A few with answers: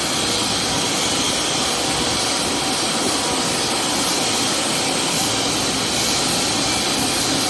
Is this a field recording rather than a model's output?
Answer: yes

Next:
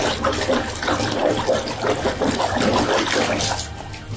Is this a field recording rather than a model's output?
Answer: no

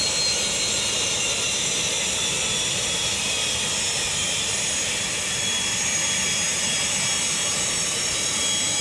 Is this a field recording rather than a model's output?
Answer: yes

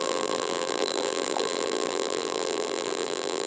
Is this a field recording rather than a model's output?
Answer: no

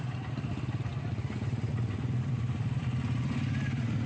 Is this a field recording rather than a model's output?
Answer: no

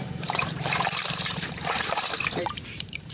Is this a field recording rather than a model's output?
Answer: no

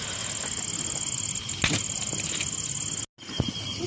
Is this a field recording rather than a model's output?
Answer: yes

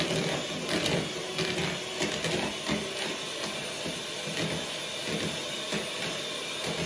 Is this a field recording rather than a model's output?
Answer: yes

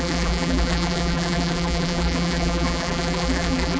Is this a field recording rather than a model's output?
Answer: no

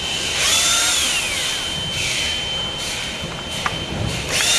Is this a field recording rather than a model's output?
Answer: no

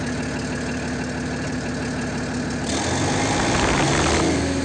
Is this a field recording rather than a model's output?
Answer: yes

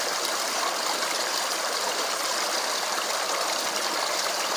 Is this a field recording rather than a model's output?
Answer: no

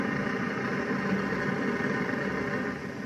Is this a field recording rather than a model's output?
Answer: yes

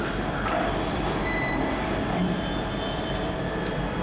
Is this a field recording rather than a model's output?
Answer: no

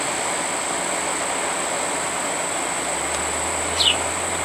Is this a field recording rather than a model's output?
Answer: yes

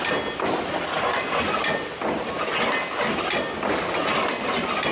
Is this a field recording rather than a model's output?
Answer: yes